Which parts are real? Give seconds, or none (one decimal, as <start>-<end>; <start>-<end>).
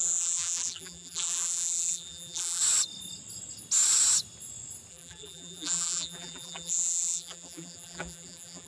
2.6-4.9